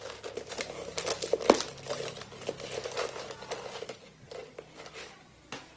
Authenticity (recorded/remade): recorded